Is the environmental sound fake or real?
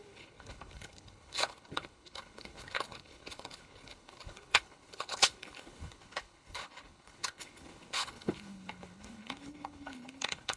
fake